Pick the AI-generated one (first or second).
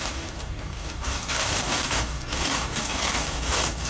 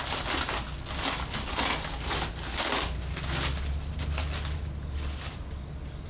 first